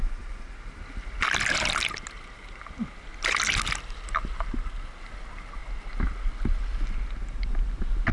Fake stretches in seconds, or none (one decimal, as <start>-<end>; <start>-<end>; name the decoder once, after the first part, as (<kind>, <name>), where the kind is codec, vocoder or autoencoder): none